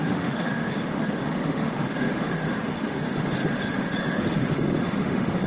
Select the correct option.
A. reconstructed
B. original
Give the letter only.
A